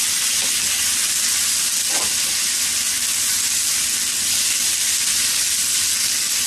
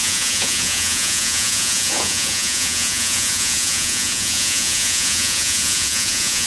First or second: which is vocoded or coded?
second